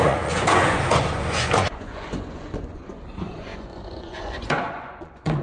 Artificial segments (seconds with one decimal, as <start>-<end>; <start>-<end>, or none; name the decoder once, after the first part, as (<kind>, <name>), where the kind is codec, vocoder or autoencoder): 0.0-5.4 (vocoder, Vocos)